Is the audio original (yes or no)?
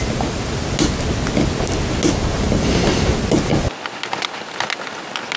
yes